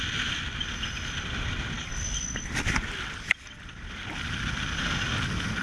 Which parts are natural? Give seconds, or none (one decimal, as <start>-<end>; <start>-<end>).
0.0-5.6